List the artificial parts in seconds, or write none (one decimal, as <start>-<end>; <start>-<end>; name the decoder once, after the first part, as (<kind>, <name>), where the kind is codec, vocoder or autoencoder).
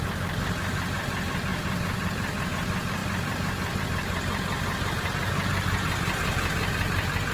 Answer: none